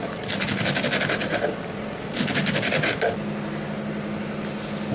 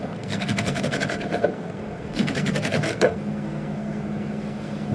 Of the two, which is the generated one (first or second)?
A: second